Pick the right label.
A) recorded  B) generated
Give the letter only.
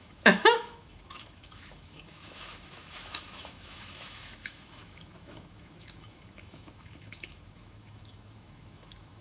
B